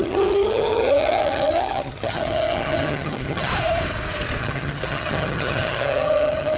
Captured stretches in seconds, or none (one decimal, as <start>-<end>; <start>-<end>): 3.5-4.4